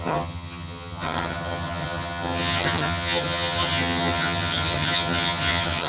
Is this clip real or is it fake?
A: fake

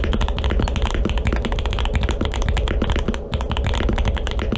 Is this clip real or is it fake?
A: real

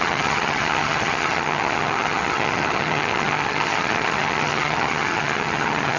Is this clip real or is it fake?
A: fake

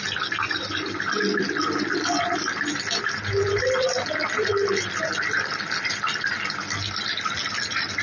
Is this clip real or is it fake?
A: real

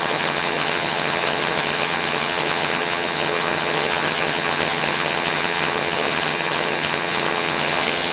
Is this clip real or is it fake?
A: fake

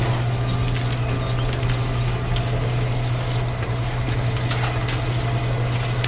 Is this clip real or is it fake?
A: real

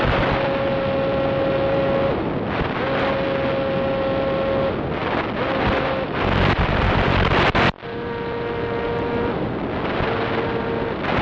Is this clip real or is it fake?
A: real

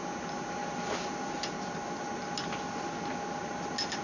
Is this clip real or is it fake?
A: real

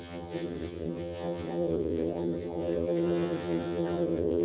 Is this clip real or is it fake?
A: fake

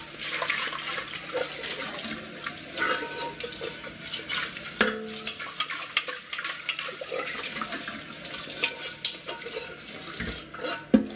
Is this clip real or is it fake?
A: real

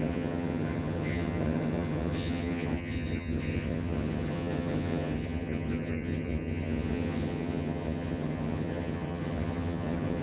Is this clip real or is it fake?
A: fake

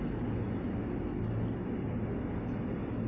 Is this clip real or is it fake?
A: real